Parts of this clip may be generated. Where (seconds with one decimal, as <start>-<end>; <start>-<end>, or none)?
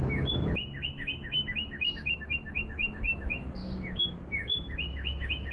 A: 0.0-5.5